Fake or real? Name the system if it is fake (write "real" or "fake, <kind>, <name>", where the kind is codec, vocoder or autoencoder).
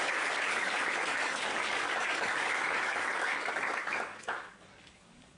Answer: fake, codec, DAC